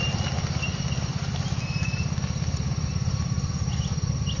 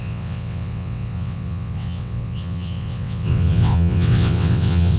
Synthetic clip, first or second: second